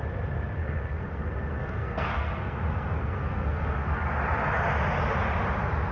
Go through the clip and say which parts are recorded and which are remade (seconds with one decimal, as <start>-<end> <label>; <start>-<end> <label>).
0.0-0.6 recorded; 0.6-4.1 remade; 4.1-5.9 recorded

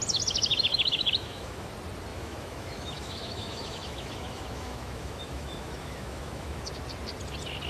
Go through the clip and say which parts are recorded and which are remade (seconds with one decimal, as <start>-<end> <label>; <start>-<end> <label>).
0.0-0.7 recorded; 0.7-1.7 remade; 1.7-2.1 recorded; 2.1-6.7 remade; 6.7-7.7 recorded

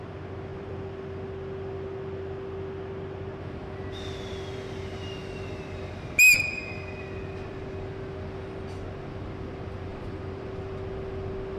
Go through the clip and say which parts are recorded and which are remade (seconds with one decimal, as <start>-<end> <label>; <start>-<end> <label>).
0.0-0.5 recorded; 0.5-1.0 remade; 1.0-9.9 recorded; 9.9-10.5 remade; 10.5-11.6 recorded

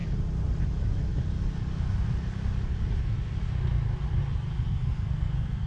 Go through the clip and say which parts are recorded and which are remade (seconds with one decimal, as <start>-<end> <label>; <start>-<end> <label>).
0.0-4.7 recorded; 4.7-5.7 remade

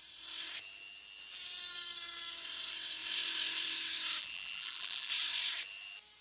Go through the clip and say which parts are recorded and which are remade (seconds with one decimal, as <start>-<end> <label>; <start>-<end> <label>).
0.0-4.2 recorded; 4.2-5.1 remade; 5.1-6.2 recorded